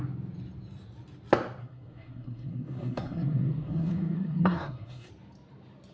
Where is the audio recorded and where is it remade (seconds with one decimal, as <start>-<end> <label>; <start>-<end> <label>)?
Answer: 0.0-1.6 recorded; 1.6-5.1 remade; 5.1-5.9 recorded